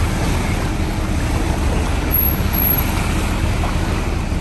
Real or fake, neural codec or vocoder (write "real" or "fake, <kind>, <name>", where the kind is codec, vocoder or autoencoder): real